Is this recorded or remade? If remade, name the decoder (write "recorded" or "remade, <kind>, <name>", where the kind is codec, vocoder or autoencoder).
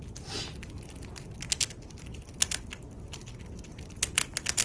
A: recorded